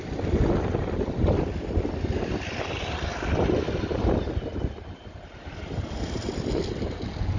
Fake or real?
real